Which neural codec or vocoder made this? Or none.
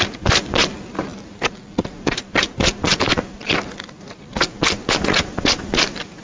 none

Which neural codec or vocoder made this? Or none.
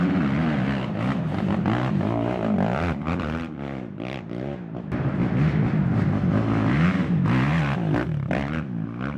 none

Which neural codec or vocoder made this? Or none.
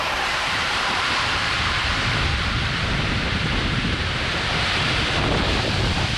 vocoder, BigVGAN v2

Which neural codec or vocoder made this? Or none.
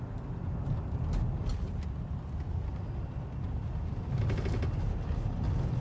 none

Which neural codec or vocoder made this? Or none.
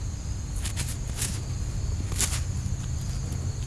none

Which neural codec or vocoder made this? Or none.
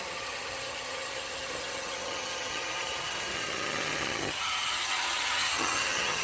vocoder, HiFi-GAN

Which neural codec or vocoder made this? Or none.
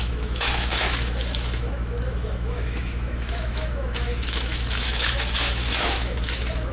autoencoder, DAC-VAE